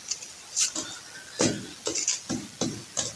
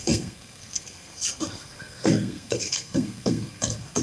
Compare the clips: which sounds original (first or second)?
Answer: first